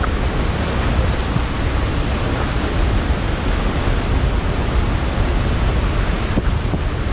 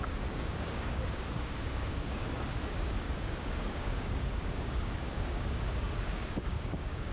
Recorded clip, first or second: first